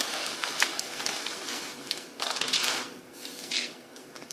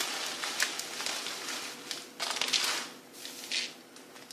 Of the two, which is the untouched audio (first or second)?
second